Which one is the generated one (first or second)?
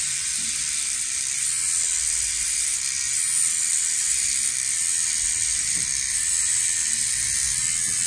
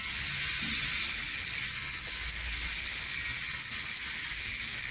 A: first